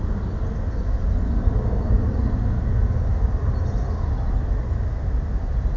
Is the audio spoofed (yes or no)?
no